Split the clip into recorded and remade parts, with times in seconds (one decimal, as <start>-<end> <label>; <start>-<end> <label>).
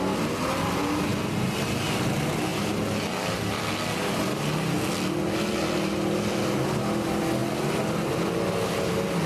0.0-9.3 recorded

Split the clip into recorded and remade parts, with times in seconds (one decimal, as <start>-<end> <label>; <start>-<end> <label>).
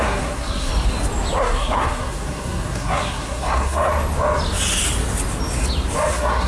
0.0-0.7 remade; 0.7-1.4 recorded; 1.4-3.9 remade; 3.9-6.1 recorded; 6.1-6.5 remade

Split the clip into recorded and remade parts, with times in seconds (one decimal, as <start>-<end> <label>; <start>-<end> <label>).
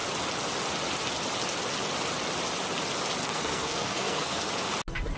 0.0-3.2 recorded; 3.2-4.5 remade; 4.5-5.2 recorded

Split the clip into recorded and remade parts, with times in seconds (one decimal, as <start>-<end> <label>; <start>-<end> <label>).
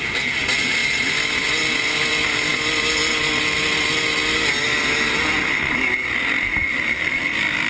0.0-7.7 recorded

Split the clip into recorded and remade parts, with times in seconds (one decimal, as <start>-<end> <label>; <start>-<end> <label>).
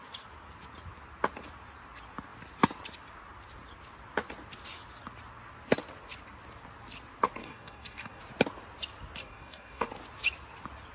0.0-7.4 recorded; 7.4-8.2 remade; 8.2-9.2 recorded; 9.2-9.9 remade; 9.9-10.9 recorded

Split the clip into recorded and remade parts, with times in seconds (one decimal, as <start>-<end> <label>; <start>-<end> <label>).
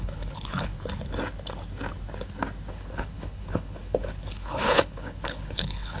0.0-0.7 remade; 0.7-2.7 recorded; 2.7-6.0 remade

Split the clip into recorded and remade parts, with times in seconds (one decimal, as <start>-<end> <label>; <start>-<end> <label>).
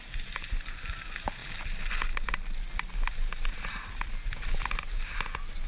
0.0-5.7 recorded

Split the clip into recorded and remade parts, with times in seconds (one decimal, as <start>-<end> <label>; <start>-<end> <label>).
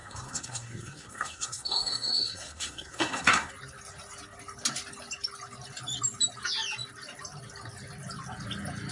0.0-3.5 remade; 3.5-8.9 recorded